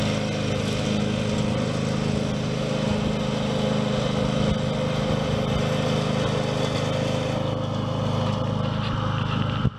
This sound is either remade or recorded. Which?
recorded